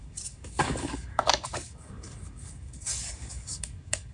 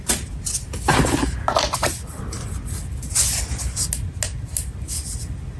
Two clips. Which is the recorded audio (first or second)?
second